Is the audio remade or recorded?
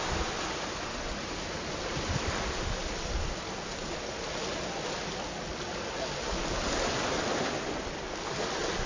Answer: recorded